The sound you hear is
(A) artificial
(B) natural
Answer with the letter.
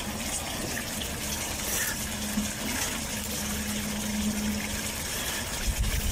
B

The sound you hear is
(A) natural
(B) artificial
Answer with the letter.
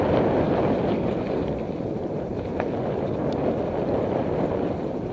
A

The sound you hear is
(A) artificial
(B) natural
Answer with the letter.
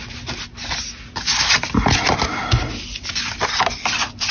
B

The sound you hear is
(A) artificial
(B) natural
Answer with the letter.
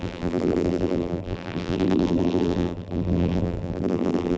A